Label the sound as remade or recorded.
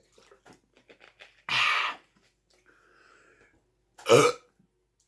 recorded